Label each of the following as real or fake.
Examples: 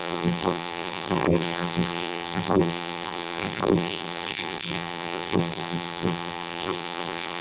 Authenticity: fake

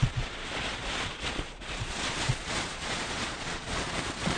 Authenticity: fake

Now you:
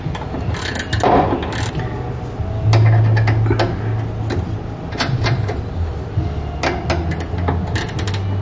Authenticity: real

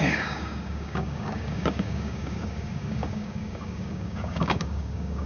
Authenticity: fake